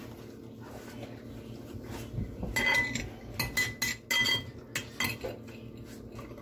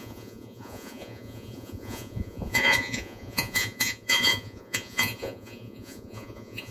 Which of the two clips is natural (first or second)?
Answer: first